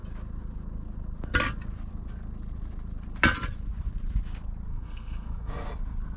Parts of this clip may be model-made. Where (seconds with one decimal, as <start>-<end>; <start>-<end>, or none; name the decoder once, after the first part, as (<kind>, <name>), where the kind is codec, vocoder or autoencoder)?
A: 4.7-5.5 (codec, SNAC)

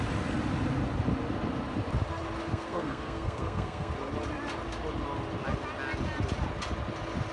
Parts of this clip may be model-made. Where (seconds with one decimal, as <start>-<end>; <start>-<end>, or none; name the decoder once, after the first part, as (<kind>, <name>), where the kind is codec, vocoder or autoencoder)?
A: 2.5-3.9 (codec, SNAC)

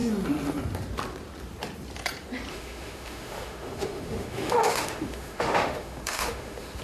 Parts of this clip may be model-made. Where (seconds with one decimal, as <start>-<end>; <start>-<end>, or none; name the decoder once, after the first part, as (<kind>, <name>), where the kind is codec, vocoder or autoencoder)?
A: 2.5-6.8 (autoencoder, DAC-VAE)

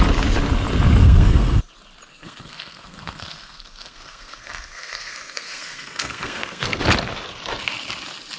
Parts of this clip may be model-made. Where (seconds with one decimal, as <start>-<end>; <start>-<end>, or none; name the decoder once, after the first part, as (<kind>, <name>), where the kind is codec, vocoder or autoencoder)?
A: 1.0-1.6 (codec, SNAC); 2.1-6.8

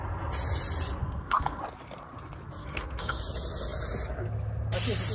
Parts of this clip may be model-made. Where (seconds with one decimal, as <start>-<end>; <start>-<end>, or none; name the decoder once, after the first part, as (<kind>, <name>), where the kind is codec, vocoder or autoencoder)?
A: 1.0-1.6 (codec, SNAC); 2.6-3.2